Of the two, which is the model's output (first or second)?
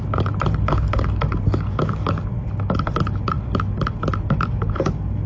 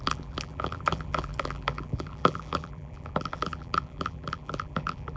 second